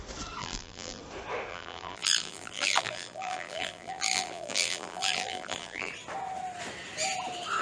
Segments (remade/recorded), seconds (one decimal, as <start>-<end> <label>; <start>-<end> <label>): 0.0-0.4 recorded; 0.4-1.0 remade; 1.0-1.5 recorded; 1.5-5.9 remade; 5.9-7.6 recorded